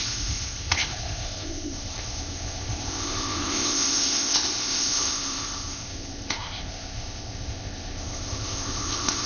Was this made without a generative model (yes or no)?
no